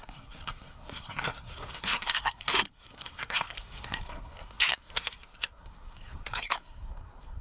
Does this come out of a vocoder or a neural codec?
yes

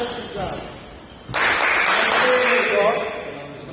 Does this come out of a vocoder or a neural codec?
no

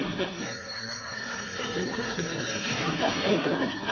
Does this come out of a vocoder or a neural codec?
yes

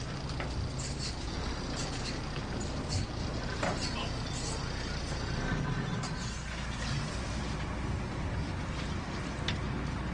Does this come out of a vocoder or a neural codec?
no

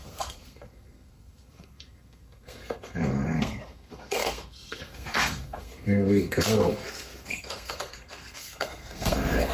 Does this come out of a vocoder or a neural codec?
yes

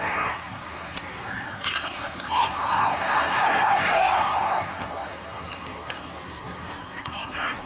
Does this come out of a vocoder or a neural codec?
yes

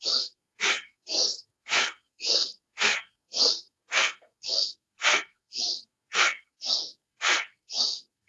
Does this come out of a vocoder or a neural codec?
yes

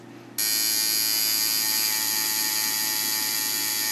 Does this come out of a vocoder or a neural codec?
no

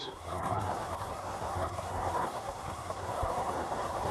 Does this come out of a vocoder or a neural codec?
yes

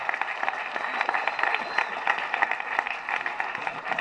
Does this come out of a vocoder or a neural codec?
no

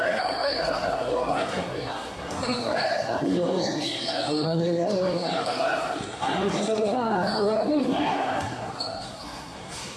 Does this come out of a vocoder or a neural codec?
yes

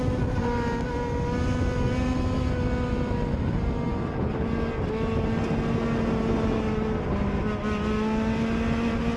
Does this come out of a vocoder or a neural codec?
no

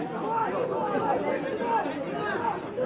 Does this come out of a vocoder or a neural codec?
no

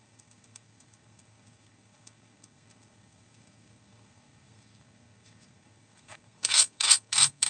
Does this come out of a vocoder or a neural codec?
yes